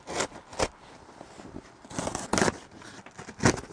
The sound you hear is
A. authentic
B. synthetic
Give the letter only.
A